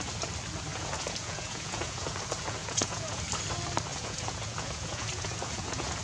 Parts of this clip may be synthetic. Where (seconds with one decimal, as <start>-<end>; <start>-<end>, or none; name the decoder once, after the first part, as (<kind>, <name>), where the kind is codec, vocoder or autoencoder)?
0.7-2.2 (vocoder, Vocos); 2.6-3.2; 3.9-6.0